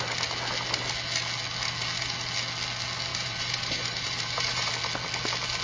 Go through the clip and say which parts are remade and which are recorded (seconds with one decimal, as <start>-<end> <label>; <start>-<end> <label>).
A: 0.0-3.1 recorded; 3.1-4.7 remade; 4.7-5.6 recorded